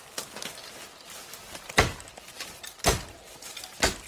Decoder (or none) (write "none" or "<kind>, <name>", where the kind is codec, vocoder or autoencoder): none